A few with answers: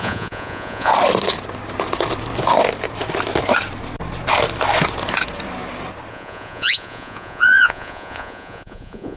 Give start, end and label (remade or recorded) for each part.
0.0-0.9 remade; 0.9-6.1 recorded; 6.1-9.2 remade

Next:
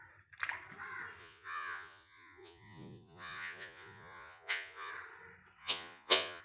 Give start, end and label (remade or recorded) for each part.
0.0-1.2 recorded; 1.2-4.9 remade; 4.9-5.6 recorded; 5.6-6.4 remade